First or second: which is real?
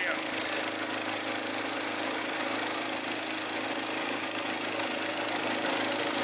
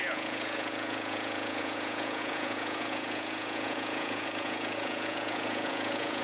first